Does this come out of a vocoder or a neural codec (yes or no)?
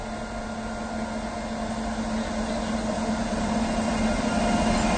no